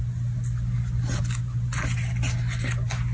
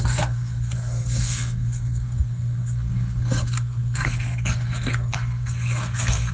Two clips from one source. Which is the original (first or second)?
first